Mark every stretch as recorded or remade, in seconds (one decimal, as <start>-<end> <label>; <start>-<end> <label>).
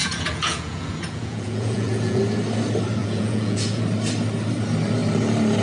0.0-2.2 remade; 2.2-3.0 recorded; 3.0-3.8 remade; 3.8-5.6 recorded